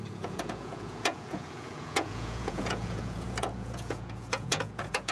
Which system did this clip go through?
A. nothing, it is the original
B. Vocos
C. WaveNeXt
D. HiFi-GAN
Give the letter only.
B